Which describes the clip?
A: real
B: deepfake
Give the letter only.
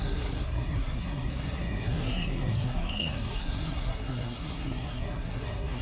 B